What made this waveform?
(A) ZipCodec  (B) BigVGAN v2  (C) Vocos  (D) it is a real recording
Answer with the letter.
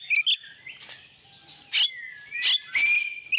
D